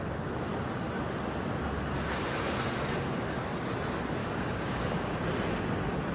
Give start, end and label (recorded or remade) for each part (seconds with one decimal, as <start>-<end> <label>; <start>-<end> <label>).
0.0-4.2 recorded; 4.2-5.2 remade; 5.2-6.1 recorded